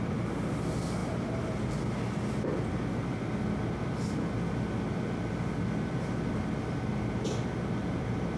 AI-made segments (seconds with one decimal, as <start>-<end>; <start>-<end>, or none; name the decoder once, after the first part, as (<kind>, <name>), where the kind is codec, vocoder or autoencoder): none

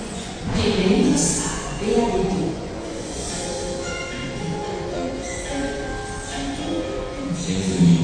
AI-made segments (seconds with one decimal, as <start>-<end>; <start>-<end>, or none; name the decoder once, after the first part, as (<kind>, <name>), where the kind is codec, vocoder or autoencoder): 0.0-5.9 (vocoder, Vocos); 6.5-8.0

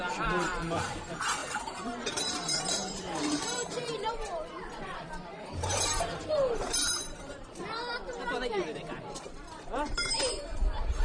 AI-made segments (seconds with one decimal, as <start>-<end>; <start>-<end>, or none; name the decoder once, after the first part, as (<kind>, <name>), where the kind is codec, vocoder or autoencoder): 0.0-11.0 (vocoder, BigVGAN v2)

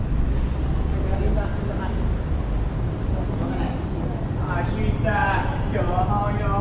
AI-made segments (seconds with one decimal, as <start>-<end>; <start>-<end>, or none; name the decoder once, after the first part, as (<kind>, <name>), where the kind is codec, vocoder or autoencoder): 5.2-6.1 (vocoder, BigVGAN v2)